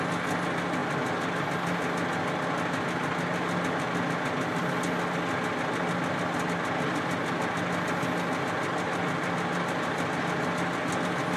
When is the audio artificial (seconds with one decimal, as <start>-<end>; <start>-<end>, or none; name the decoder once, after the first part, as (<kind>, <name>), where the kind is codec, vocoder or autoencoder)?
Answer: none